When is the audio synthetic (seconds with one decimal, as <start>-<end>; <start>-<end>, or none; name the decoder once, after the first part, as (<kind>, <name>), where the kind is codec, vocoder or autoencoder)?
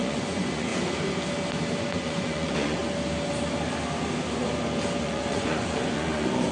0.0-0.7 (vocoder, Vocos); 1.8-2.8; 5.0-6.5